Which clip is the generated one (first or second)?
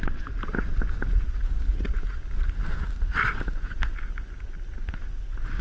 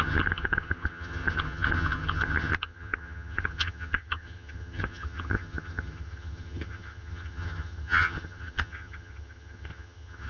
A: second